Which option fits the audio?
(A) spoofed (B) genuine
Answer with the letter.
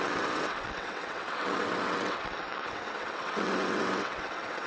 A